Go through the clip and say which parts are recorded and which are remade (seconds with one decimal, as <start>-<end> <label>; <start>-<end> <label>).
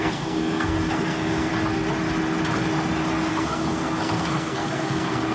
0.0-1.5 remade; 1.5-3.3 recorded; 3.3-5.3 remade